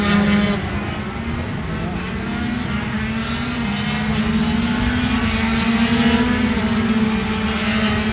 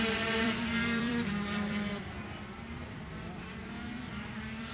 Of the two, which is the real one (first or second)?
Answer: first